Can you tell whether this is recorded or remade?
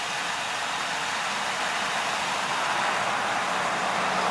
recorded